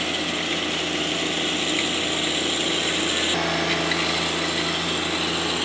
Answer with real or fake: real